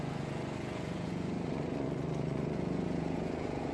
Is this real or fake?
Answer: fake